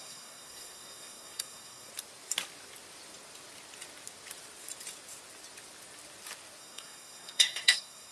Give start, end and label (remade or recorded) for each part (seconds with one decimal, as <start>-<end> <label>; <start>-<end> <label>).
0.0-1.9 remade; 1.9-6.6 recorded; 6.6-8.1 remade